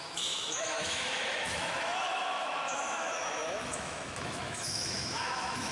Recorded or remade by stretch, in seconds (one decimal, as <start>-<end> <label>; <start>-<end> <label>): 0.0-5.7 remade